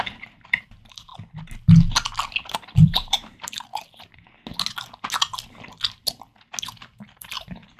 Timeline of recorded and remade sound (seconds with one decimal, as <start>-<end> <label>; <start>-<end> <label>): 0.0-1.1 remade; 1.1-2.8 recorded; 2.8-3.7 remade; 3.7-6.8 recorded; 6.8-7.8 remade